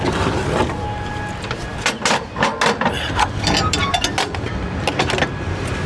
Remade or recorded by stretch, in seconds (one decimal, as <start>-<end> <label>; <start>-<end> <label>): 0.0-5.9 recorded